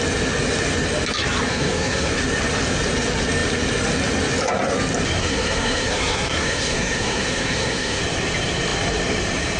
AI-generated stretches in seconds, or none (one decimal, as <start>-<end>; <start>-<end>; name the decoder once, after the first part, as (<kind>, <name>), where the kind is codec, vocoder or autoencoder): 1.5-2.1 (codec, SNAC); 5.2-8.0